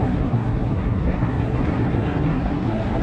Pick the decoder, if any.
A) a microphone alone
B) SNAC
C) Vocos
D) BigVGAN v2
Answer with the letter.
B